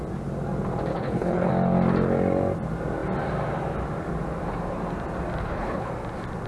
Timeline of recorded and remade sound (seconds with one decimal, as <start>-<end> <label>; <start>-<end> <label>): 0.0-0.9 recorded; 0.9-1.5 remade; 1.5-5.4 recorded; 5.4-5.9 remade; 5.9-6.5 recorded